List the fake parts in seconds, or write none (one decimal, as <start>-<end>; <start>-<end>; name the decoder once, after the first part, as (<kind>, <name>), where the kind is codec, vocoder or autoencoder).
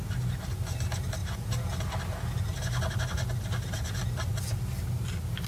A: none